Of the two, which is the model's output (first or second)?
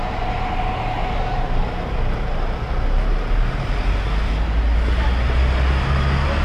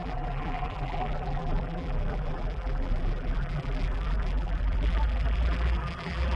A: second